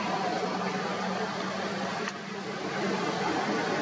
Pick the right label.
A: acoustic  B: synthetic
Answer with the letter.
A